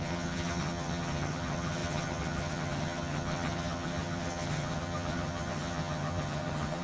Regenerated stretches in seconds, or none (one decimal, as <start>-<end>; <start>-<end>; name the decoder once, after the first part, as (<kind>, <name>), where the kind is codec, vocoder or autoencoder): 0.0-6.8 (vocoder, HiFi-GAN)